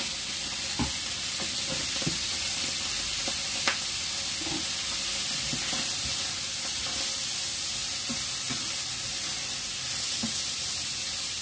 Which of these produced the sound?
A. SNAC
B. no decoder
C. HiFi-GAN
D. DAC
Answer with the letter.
B